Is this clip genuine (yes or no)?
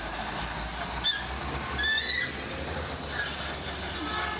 yes